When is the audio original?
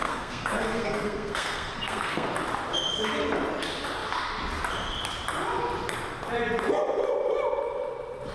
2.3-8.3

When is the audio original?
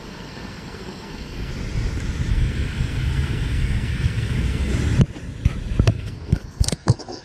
1.5-2.3; 4.7-5.9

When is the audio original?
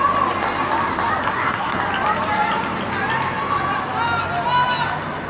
0.0-1.2; 1.8-5.3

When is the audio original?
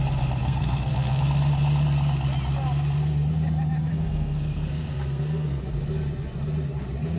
0.0-0.4; 1.2-3.9; 5.6-7.2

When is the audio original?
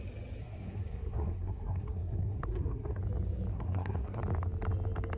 0.0-0.4; 3.0-3.5; 4.2-5.2